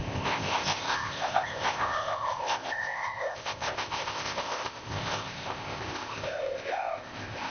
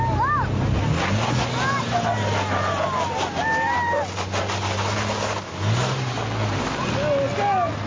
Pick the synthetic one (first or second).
first